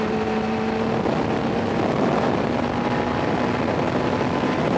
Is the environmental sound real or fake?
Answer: fake